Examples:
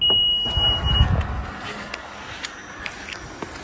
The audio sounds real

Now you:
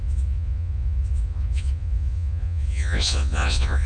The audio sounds fake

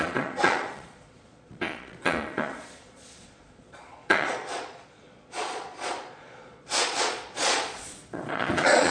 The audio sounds fake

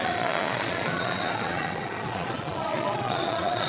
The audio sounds fake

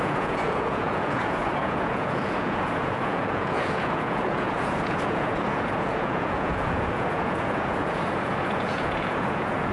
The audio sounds fake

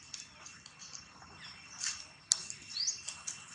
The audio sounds real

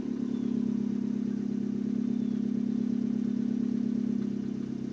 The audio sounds real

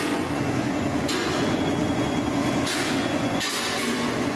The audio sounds fake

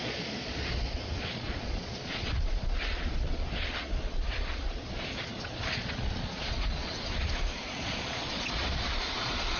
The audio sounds fake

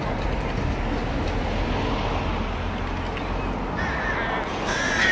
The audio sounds real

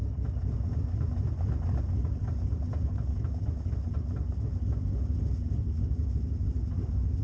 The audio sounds real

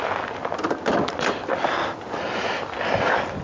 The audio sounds real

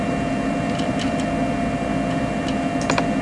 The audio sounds real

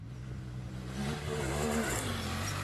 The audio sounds real